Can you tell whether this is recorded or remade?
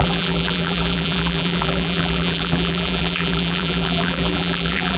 remade